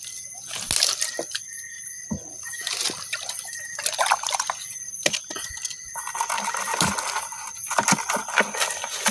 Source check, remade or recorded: recorded